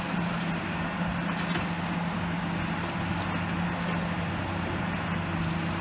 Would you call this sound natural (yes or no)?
yes